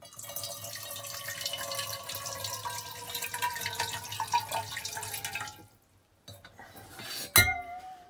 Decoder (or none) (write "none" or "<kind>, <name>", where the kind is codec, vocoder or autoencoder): none